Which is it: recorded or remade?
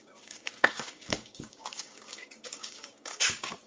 remade